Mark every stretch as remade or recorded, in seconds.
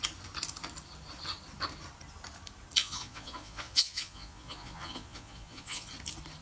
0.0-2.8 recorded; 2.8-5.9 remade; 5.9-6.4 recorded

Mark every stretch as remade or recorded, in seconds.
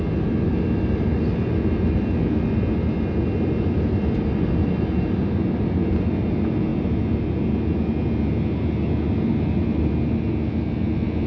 0.0-11.3 recorded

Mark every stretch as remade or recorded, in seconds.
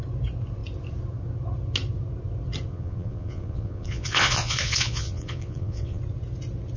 0.0-2.7 recorded; 2.7-6.0 remade; 6.0-6.8 recorded